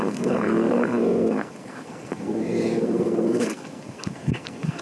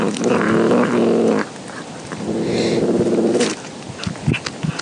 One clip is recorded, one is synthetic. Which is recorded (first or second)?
second